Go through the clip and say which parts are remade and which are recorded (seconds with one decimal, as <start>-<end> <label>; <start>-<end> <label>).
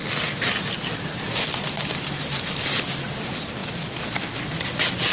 0.0-3.6 recorded; 3.6-4.2 remade; 4.2-5.1 recorded